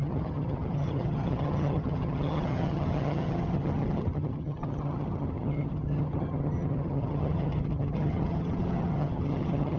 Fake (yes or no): yes